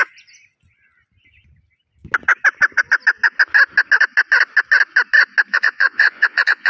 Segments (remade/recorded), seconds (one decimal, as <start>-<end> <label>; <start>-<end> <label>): 0.0-5.5 recorded; 5.5-6.7 remade